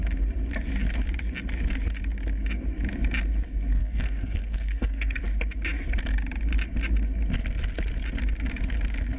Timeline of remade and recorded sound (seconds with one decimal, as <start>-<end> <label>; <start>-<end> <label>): 0.0-3.8 recorded; 3.8-5.2 remade; 5.2-9.2 recorded